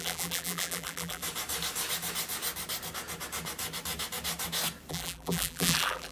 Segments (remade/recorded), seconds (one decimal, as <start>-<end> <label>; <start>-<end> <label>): 0.0-1.2 remade; 1.2-4.9 recorded; 4.9-6.1 remade